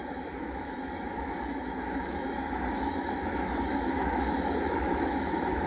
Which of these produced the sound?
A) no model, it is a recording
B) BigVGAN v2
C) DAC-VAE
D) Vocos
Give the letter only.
C